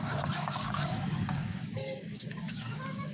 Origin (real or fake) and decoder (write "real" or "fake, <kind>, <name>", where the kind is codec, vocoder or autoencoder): fake, codec, DAC